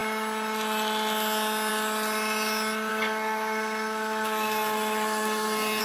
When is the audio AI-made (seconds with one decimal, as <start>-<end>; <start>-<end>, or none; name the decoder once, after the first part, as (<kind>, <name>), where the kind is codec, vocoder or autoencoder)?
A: 2.9-5.8 (codec, SNAC)